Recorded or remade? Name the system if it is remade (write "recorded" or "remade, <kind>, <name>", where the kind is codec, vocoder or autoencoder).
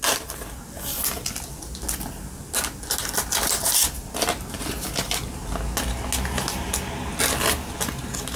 recorded